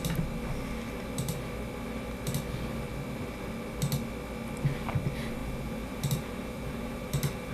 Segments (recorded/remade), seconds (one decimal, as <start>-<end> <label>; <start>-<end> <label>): 0.0-5.4 recorded; 5.4-7.5 remade